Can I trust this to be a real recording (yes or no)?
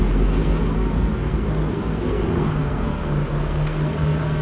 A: no